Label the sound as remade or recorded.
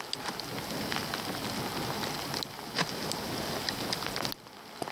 recorded